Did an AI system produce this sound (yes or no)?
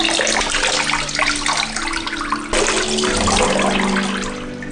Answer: no